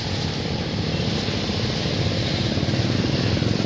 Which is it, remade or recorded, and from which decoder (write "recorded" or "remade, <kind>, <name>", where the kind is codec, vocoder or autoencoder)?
recorded